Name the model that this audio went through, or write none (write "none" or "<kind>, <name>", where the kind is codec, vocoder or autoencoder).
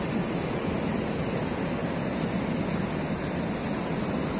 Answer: none